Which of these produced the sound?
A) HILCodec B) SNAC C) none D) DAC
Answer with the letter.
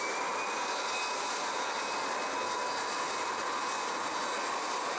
C